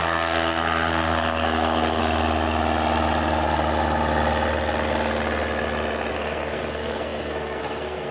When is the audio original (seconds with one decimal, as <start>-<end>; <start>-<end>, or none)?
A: 2.0-6.1